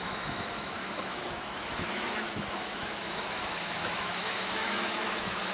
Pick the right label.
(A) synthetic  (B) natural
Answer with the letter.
A